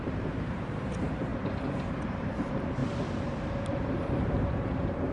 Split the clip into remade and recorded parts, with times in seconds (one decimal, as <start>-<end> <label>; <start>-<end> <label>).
0.0-2.8 remade; 2.8-3.5 recorded; 3.5-5.1 remade